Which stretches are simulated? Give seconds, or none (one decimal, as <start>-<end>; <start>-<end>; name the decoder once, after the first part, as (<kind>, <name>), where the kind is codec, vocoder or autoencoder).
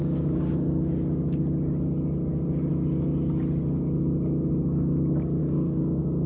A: 0.0-0.5 (codec, DAC); 5.4-6.3